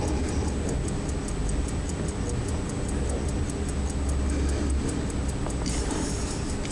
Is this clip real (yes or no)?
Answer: yes